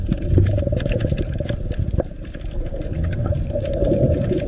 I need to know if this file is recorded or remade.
remade